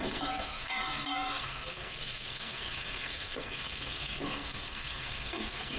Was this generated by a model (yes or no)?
yes